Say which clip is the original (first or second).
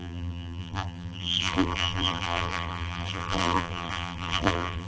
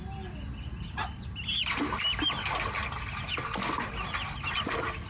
second